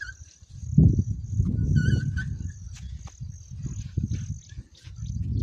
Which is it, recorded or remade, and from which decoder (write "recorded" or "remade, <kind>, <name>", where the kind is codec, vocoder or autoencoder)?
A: recorded